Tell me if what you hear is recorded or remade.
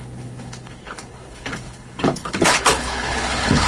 remade